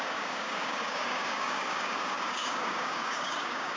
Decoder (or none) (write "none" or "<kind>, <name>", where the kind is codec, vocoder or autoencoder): codec, DAC